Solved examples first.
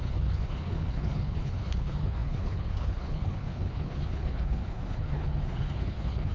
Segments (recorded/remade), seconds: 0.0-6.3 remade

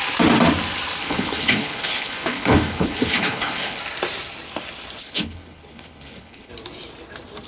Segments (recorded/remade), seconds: 0.0-1.0 recorded; 1.0-3.8 remade; 3.8-5.0 recorded; 5.0-6.5 remade; 6.5-7.5 recorded

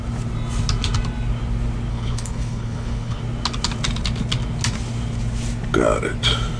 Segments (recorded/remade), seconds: 0.0-1.9 recorded; 1.9-3.2 remade; 3.2-6.6 recorded